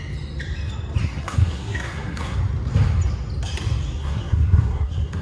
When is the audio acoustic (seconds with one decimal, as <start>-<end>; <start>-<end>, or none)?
0.0-1.0; 2.4-4.0